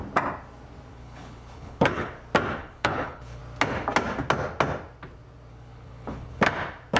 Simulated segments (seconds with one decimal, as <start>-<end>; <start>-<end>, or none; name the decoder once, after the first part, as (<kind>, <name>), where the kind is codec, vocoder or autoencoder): 0.9-2.1 (codec, HILCodec); 2.6-3.4; 5.5-6.4